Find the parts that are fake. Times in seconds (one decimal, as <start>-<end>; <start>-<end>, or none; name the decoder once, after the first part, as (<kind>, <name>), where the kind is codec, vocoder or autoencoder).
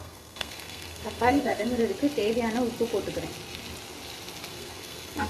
0.0-1.8 (codec, SNAC); 4.5-5.3